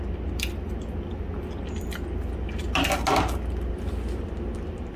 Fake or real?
real